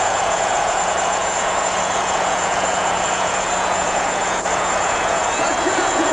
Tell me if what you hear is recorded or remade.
remade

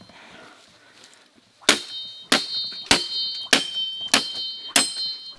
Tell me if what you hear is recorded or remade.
recorded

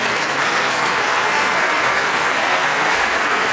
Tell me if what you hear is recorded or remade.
remade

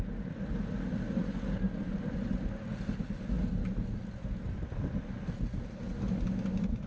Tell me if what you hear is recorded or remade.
recorded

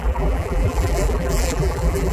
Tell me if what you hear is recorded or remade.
remade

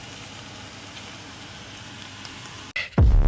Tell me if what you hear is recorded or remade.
recorded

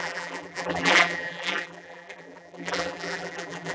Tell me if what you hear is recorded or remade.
remade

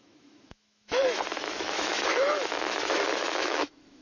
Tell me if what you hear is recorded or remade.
remade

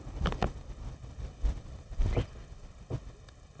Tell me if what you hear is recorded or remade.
recorded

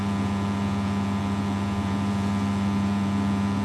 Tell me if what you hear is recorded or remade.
remade